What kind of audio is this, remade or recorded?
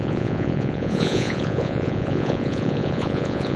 remade